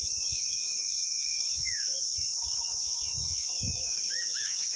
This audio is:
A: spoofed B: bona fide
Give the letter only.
A